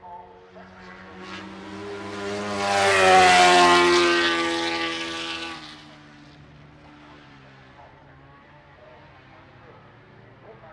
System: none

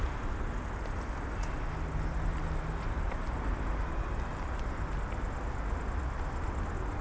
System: none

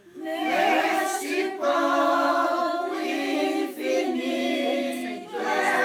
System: autoencoder, DAC-VAE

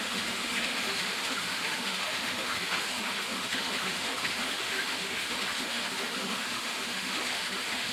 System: autoencoder, DAC-VAE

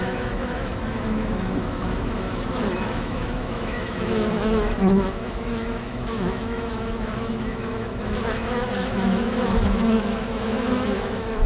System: autoencoder, DAC-VAE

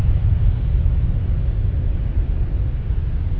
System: none